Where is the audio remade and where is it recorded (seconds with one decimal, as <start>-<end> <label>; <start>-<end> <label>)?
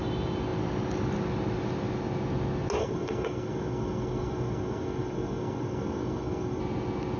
0.0-2.8 recorded; 2.8-6.6 remade; 6.6-7.2 recorded